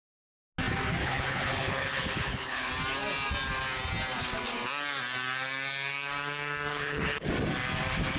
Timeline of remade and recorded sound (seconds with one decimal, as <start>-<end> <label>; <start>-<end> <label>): 0.0-1.0 recorded; 1.0-2.7 remade; 2.7-6.7 recorded; 6.7-7.3 remade; 7.3-8.2 recorded